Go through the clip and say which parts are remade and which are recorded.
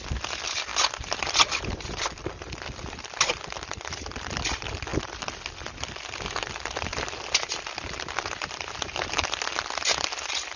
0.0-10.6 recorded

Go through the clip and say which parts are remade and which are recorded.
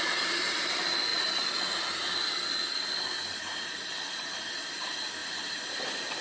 0.0-6.2 recorded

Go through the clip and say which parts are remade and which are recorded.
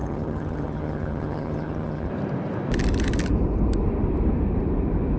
0.0-2.1 remade; 2.1-5.2 recorded